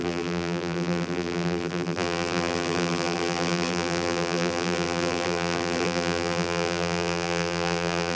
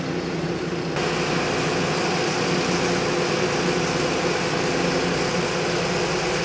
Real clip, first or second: second